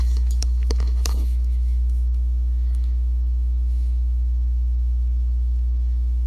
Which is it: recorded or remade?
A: remade